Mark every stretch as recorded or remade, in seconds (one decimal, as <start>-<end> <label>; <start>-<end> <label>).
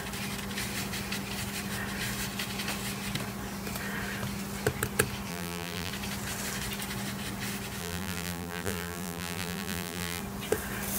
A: 0.0-5.3 recorded; 5.3-5.9 remade; 5.9-7.8 recorded; 7.8-10.2 remade; 10.2-11.0 recorded